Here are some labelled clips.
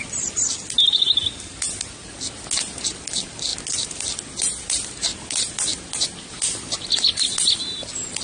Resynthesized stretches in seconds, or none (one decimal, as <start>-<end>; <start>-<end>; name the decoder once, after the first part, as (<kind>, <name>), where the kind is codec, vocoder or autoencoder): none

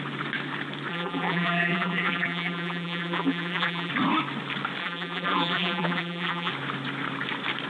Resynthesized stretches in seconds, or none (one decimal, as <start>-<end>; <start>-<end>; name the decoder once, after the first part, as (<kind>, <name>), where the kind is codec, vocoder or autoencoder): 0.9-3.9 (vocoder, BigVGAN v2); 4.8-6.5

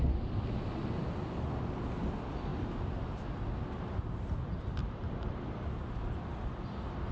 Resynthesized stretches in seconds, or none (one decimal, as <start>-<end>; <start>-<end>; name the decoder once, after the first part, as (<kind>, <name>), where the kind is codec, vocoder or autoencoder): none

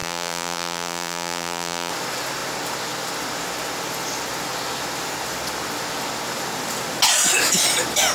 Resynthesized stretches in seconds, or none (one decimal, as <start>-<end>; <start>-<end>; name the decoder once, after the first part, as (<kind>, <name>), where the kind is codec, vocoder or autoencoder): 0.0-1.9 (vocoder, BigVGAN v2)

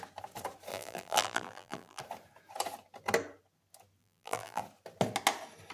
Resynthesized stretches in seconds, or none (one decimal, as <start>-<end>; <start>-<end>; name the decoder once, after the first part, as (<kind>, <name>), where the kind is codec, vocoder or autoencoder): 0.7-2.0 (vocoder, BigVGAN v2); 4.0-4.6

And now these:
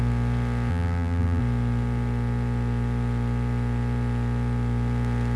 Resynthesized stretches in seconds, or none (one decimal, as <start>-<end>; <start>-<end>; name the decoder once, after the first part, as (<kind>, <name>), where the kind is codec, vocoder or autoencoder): 0.7-1.4 (vocoder, BigVGAN v2)